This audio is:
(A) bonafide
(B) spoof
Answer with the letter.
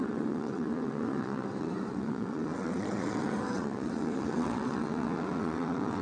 B